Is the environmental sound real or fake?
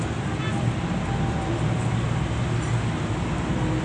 real